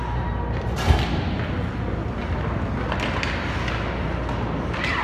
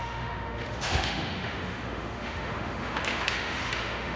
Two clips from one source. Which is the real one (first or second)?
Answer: first